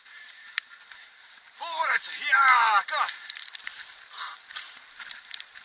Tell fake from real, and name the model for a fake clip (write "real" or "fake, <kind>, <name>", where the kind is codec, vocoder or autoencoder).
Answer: fake, vocoder, BigVGAN v2